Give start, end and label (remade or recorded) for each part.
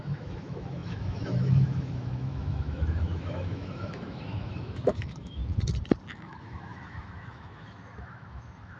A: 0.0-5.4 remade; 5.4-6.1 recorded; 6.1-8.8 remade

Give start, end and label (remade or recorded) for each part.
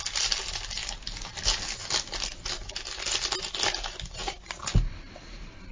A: 0.0-5.7 recorded